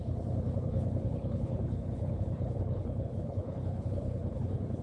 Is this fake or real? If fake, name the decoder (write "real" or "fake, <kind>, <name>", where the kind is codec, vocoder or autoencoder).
fake, codec, HILCodec